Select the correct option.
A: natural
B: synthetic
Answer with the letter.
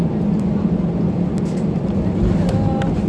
A